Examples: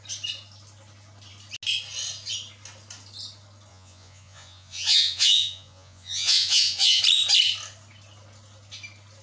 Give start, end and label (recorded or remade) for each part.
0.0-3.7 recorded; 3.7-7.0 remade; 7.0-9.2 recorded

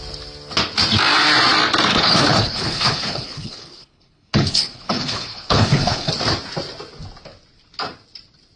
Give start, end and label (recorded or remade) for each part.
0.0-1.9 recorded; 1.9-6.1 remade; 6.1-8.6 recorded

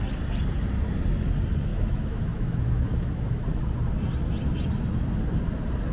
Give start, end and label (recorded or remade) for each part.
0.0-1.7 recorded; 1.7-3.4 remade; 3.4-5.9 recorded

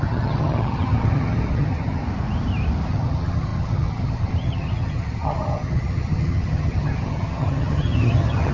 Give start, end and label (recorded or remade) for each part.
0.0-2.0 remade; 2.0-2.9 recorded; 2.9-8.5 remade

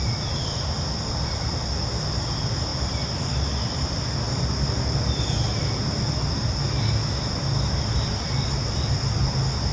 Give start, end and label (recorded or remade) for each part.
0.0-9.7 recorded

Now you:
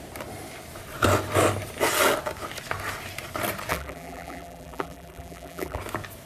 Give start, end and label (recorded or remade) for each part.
0.0-3.7 recorded; 3.7-5.8 remade; 5.8-6.3 recorded